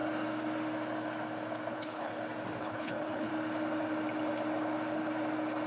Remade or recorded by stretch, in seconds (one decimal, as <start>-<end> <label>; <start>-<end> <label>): 0.0-1.7 recorded; 1.7-2.1 remade; 2.1-2.6 recorded; 2.6-3.3 remade; 3.3-5.7 recorded